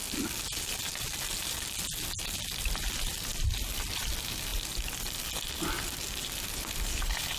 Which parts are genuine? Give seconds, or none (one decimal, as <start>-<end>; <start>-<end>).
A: 0.0-7.4